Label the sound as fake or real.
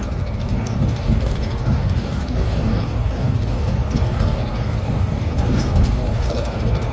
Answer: fake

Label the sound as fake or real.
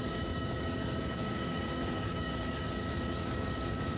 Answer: fake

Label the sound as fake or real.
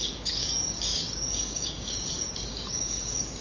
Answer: fake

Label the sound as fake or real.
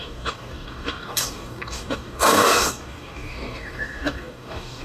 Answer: fake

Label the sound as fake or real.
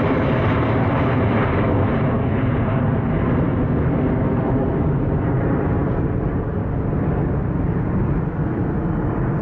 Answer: real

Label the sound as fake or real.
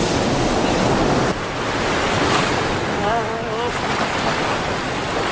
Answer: real